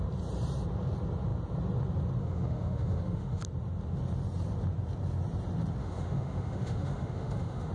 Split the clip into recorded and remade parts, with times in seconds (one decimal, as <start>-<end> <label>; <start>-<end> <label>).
0.0-2.2 recorded; 2.2-3.4 remade; 3.4-5.8 recorded; 5.8-7.7 remade